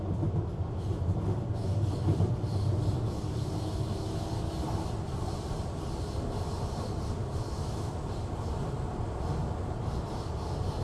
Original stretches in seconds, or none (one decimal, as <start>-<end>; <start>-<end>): 0.0-7.2; 7.9-10.8